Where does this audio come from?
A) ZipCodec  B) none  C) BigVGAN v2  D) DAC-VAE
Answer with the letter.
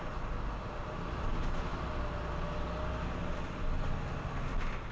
B